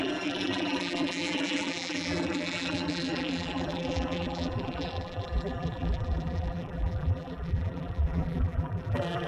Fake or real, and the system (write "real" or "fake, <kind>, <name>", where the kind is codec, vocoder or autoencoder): fake, vocoder, BigVGAN v2